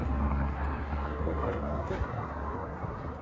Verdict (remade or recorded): remade